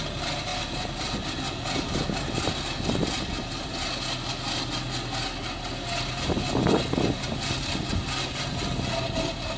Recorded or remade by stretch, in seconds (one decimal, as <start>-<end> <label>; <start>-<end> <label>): 0.0-9.6 recorded

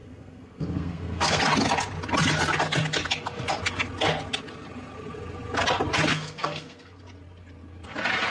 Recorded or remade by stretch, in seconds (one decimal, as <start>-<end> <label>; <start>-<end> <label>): 0.0-1.4 remade; 1.4-6.1 recorded; 6.1-7.0 remade; 7.0-8.3 recorded

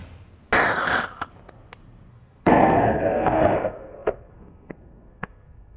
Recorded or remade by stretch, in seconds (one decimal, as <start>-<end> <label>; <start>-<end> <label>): 0.0-2.1 recorded; 2.1-5.8 remade

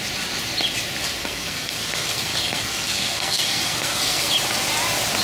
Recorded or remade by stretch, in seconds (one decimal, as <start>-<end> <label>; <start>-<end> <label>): 0.0-1.2 recorded; 1.2-4.3 remade; 4.3-5.2 recorded